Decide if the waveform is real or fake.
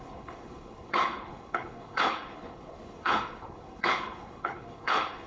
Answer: fake